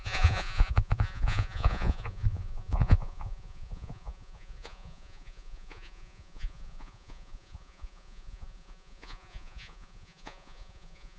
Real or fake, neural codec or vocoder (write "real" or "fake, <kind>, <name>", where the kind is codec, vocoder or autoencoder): fake, vocoder, Vocos